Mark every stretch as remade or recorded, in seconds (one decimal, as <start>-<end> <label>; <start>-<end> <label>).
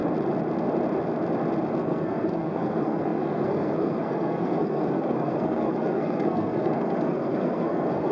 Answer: 0.0-1.8 recorded; 1.8-8.1 remade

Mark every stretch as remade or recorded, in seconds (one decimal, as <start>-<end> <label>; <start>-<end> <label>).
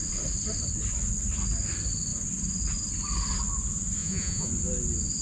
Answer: 0.0-4.0 recorded; 4.0-4.5 remade; 4.5-5.2 recorded